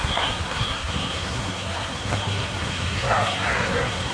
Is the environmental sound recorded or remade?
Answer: remade